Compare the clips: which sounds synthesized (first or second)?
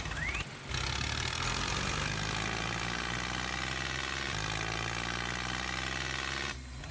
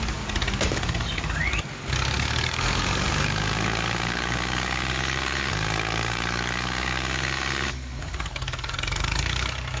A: second